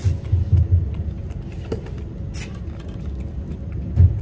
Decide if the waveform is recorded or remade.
recorded